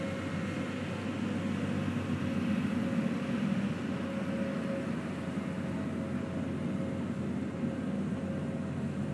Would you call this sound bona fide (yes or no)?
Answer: yes